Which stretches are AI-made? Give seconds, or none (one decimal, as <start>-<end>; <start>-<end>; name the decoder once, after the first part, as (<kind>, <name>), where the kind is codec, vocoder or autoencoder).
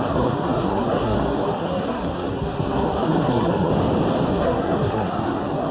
0.0-3.7 (codec, SNAC); 4.3-5.7